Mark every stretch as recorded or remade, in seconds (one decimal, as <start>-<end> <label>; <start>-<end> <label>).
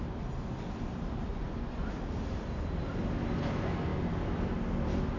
0.0-1.3 recorded; 1.3-1.9 remade; 1.9-5.2 recorded